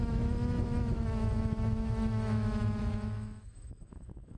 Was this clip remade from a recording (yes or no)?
yes